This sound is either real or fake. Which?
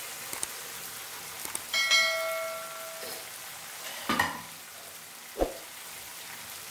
real